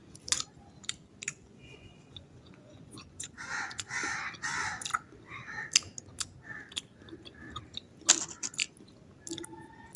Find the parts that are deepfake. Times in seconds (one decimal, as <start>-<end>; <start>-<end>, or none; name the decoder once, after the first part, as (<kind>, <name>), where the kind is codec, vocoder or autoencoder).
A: 1.3-4.0 (vocoder, Vocos)